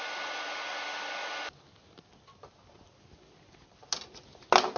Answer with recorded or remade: recorded